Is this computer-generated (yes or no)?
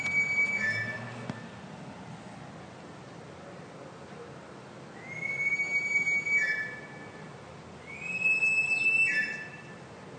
no